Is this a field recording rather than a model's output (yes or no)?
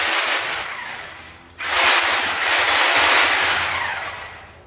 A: yes